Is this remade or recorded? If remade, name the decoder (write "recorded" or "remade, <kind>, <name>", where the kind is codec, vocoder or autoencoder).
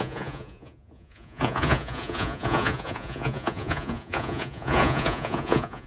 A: remade, vocoder, Vocos